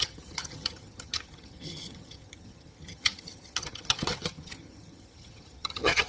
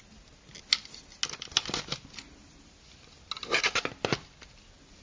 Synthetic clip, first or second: first